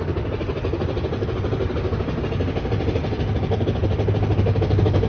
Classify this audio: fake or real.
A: real